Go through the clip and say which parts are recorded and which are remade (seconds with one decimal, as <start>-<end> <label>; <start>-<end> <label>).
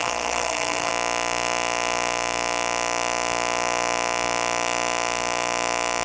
0.0-0.9 remade; 0.9-6.0 recorded